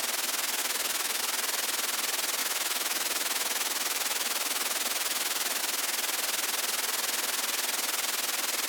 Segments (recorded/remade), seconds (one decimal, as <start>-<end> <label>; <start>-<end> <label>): 0.0-0.6 recorded; 0.6-1.2 remade; 1.2-2.4 recorded; 2.4-5.6 remade; 5.6-8.7 recorded

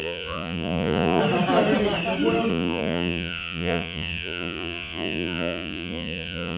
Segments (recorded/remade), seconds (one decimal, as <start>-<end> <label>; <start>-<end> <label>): 0.0-1.2 remade; 1.2-2.5 recorded; 2.5-6.6 remade

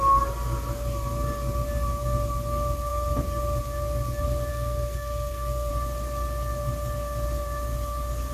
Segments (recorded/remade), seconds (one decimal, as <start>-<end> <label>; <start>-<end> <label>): 0.0-4.5 recorded; 4.5-5.7 remade; 5.7-8.3 recorded

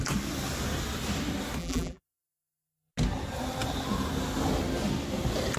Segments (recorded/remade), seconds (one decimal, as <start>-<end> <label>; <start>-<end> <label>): 0.0-1.6 recorded; 1.6-2.9 remade; 2.9-5.6 recorded

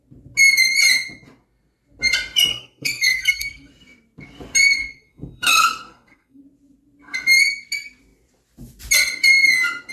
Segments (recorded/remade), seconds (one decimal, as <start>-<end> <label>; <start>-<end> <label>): 0.0-2.5 recorded; 2.5-3.7 remade; 3.7-4.9 recorded; 4.9-6.4 remade; 6.4-9.9 recorded

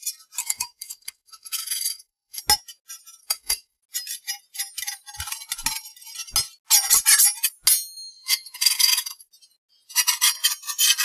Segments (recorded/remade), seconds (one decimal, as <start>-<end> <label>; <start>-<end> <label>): 0.0-0.4 recorded; 0.4-2.4 remade; 2.4-3.2 recorded; 3.2-3.8 remade; 3.8-8.1 recorded; 8.1-9.3 remade; 9.3-11.0 recorded

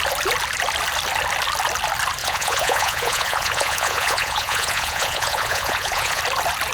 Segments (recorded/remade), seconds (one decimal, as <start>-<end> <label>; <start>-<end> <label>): 0.0-2.2 recorded; 2.2-6.2 remade; 6.2-6.7 recorded

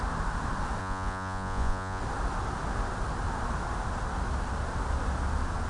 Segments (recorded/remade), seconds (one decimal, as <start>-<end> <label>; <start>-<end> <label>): 0.0-0.8 recorded; 0.8-2.0 remade; 2.0-5.7 recorded